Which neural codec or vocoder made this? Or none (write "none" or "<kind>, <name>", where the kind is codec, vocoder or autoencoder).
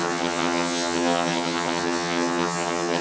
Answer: vocoder, HiFi-GAN